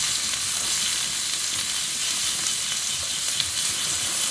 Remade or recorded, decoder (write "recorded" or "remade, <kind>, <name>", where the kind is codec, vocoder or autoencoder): recorded